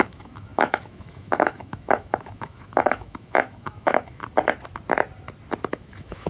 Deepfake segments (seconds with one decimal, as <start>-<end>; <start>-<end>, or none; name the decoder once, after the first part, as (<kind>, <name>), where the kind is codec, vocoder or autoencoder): 0.0-4.2 (autoencoder, DAC-VAE); 5.7-6.3